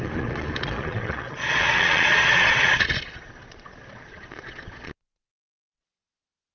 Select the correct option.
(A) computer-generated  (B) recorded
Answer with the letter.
A